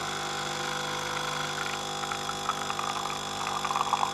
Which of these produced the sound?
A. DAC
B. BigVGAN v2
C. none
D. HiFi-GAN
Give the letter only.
C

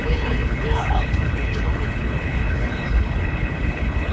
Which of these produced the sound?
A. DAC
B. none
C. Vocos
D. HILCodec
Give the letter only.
D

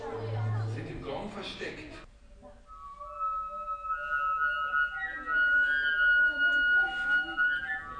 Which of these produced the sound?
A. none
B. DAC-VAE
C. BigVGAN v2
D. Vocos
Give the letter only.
A